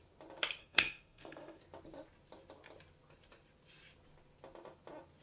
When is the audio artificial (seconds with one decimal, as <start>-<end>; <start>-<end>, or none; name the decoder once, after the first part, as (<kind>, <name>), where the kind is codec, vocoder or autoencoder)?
0.6-1.6 (codec, SNAC)